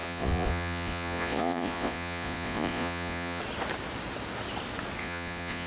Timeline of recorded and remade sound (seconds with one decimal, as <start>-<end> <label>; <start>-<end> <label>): 0.0-3.4 remade; 3.4-5.0 recorded; 5.0-5.7 remade